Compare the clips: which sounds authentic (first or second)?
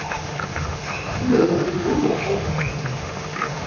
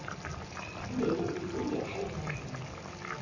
second